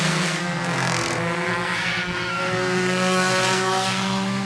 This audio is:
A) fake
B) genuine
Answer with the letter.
A